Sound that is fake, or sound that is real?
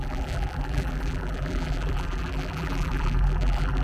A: fake